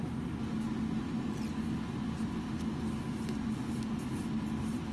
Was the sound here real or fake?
real